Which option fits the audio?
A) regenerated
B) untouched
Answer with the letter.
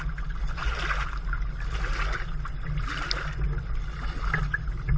B